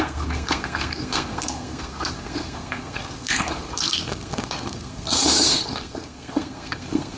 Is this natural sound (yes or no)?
no